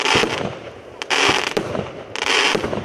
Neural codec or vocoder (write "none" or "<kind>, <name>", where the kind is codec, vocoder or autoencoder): none